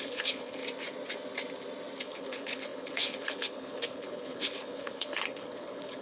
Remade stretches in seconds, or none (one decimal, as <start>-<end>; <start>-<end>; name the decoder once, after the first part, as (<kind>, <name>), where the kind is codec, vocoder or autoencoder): 0.0-0.6 (codec, HILCodec); 2.0-6.0